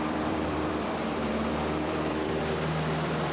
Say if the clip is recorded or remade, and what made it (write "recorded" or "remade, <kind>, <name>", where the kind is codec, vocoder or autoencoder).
remade, vocoder, BigVGAN v2